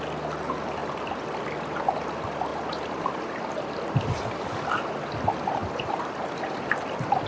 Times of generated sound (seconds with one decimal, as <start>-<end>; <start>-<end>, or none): 0.8-1.4; 2.5-4.0; 5.6-6.5